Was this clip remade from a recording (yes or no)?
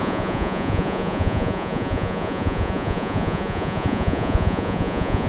yes